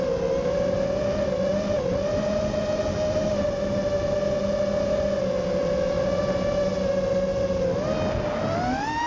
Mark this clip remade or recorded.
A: recorded